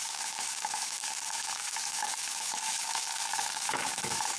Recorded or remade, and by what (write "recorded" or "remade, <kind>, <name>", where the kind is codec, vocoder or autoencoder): remade, codec, DAC